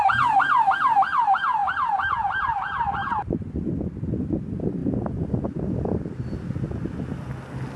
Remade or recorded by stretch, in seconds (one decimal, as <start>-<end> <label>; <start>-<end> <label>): 0.0-1.6 recorded; 1.6-3.4 remade; 3.4-4.8 recorded; 4.8-5.3 remade; 5.3-7.8 recorded